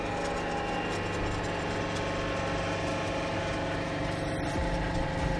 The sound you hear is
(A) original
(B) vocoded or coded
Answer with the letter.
A